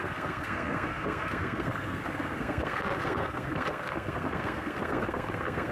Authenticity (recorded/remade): remade